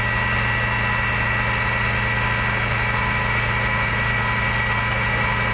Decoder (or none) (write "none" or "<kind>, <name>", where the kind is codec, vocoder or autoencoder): none